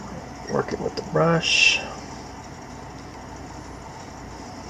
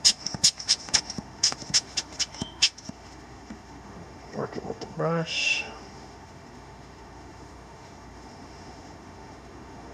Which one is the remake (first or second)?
second